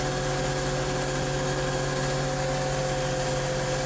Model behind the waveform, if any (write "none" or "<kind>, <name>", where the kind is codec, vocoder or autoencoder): none